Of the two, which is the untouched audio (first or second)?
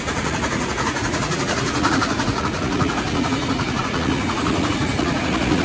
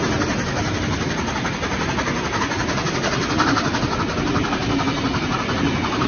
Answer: second